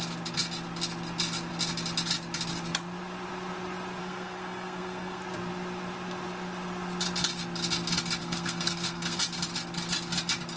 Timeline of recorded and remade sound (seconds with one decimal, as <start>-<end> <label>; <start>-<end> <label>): 0.0-4.0 recorded; 4.0-5.2 remade; 5.2-8.2 recorded; 8.2-9.2 remade; 9.2-10.6 recorded